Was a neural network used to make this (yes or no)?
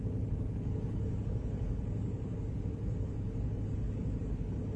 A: yes